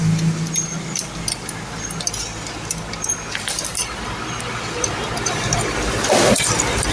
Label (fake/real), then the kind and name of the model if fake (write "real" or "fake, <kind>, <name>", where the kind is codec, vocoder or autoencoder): fake, vocoder, BigVGAN v2